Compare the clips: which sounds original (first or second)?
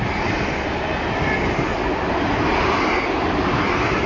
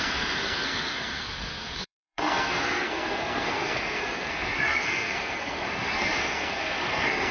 first